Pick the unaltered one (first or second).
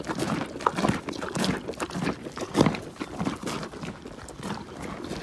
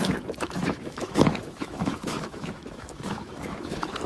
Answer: first